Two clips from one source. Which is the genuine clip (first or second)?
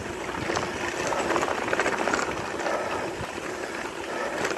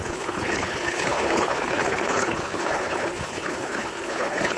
first